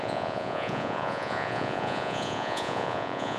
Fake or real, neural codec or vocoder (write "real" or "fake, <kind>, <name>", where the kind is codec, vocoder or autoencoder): fake, vocoder, Vocos